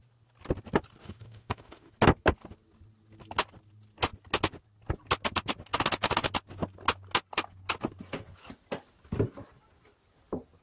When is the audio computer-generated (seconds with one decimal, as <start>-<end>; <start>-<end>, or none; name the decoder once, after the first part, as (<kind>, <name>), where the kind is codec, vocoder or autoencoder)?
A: 1.0-1.9 (autoencoder, DAC-VAE)